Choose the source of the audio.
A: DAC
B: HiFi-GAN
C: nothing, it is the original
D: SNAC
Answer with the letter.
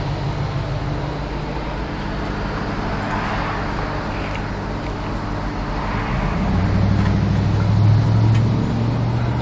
C